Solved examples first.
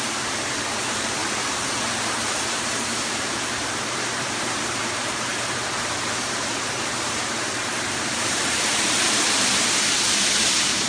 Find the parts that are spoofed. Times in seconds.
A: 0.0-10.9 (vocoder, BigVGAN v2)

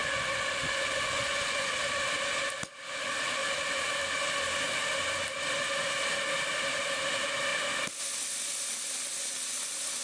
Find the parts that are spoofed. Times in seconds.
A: 0.0-1.7 (vocoder, Vocos)

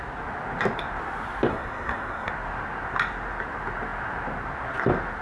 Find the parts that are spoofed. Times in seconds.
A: 1.5-2.3 (codec, SNAC)